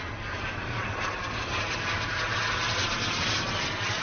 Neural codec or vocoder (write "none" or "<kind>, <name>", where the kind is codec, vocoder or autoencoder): none